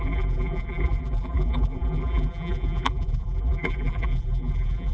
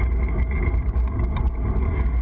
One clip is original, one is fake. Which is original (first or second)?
second